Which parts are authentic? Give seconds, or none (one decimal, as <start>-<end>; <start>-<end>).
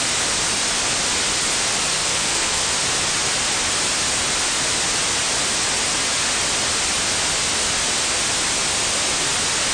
0.0-1.9; 2.7-9.7